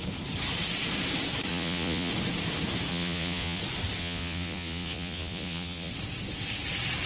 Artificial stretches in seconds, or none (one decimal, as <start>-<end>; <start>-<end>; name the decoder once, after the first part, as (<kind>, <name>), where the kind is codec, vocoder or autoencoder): 1.5-2.1 (vocoder, Vocos); 2.9-3.6; 4.0-5.9